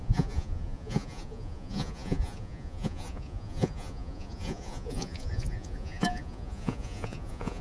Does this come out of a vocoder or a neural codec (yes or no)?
yes